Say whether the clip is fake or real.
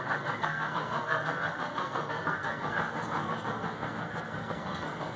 fake